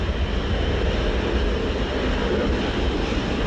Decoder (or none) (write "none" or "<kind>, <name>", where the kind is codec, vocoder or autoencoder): none